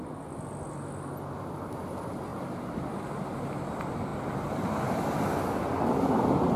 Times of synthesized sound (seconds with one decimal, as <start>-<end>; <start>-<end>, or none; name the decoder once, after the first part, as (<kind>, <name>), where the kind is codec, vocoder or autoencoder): 2.3-2.8 (vocoder, BigVGAN v2); 4.1-4.6